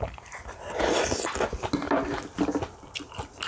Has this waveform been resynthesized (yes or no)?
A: no